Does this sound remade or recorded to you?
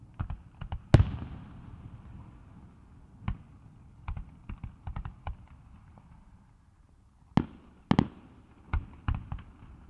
recorded